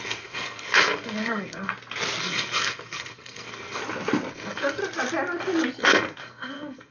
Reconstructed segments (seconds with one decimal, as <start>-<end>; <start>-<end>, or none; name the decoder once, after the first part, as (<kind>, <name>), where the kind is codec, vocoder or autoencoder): 0.0-1.7 (codec, SNAC); 2.2-3.8; 4.3-4.8; 5.8-6.9